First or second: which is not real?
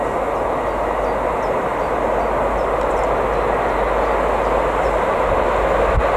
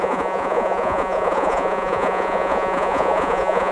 second